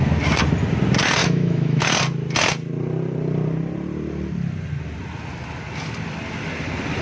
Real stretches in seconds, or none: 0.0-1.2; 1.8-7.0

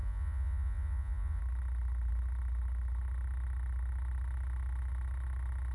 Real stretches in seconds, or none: 1.4-5.7

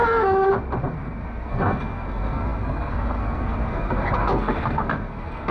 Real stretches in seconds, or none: 0.0-0.9

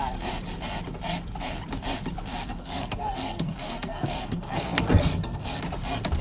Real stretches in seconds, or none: 0.0-2.3; 5.6-6.2